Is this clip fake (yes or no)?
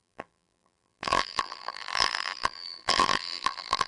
yes